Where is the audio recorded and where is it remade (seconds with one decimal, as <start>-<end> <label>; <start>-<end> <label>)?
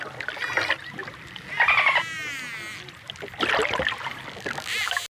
0.0-5.1 recorded